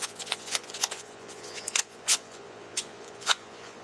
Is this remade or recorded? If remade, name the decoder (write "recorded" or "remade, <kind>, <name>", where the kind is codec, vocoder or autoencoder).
remade, vocoder, Vocos